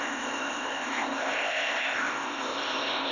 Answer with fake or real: fake